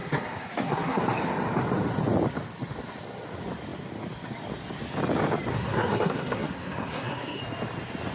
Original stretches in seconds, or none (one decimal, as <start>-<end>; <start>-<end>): 1.0-5.5; 7.4-8.1